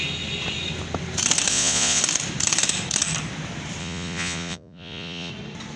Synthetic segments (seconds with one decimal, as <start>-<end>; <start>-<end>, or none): 1.5-2.0; 3.8-5.3